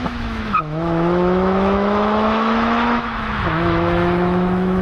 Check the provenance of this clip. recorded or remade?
remade